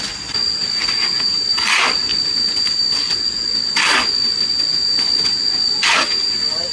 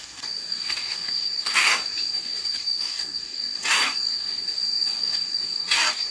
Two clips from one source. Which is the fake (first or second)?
second